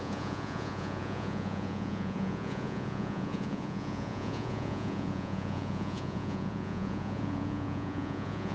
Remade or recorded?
remade